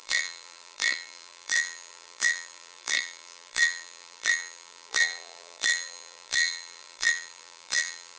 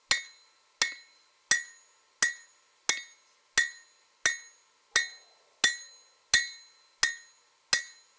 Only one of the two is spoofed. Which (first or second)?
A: first